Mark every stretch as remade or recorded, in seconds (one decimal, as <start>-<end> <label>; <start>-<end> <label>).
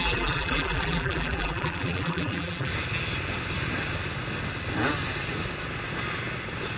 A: 0.0-2.7 remade; 2.7-6.8 recorded